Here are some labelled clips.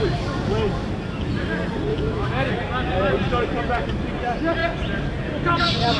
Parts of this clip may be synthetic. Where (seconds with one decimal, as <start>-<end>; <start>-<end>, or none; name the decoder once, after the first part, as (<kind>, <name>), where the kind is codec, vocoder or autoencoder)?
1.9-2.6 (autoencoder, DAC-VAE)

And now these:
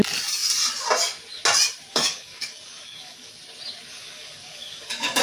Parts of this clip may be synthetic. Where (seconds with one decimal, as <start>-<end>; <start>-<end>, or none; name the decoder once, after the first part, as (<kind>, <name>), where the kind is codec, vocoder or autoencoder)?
1.9-3.4 (codec, DAC); 3.9-5.2

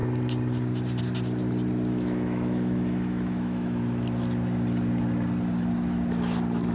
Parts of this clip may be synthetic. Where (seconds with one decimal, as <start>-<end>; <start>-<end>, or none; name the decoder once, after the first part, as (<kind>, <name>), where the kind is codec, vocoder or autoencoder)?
1.9-3.8 (autoencoder, DAC-VAE)

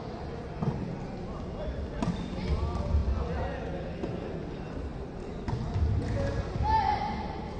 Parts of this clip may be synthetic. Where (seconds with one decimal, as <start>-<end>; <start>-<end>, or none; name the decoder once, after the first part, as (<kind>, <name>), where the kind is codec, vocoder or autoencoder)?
none